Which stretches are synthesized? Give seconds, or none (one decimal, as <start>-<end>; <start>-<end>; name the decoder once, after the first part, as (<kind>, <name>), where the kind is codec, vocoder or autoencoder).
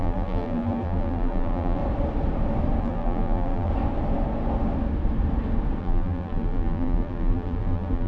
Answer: 0.0-1.8 (vocoder, BigVGAN v2); 2.8-3.7; 5.8-8.1